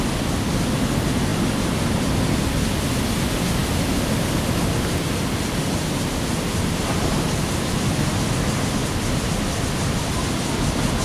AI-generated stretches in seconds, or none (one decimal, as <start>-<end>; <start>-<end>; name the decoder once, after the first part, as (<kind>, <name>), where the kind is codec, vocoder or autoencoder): none